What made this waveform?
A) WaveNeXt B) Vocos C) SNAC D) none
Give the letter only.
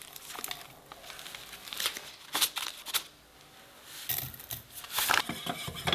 D